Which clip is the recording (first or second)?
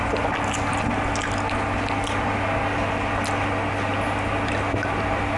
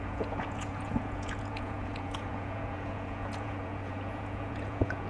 first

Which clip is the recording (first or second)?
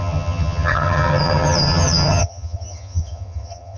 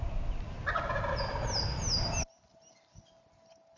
second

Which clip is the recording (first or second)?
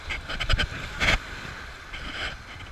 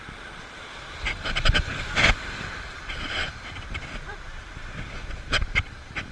first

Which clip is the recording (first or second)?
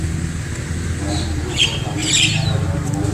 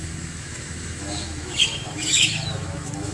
first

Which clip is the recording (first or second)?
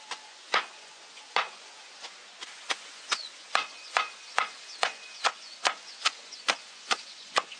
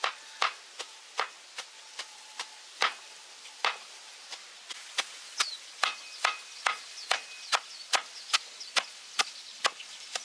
second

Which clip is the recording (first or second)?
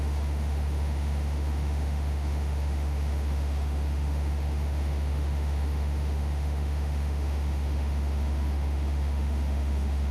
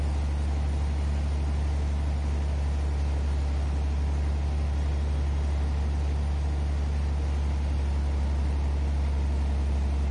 second